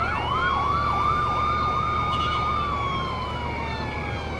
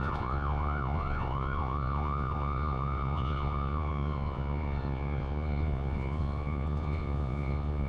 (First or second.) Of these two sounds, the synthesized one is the second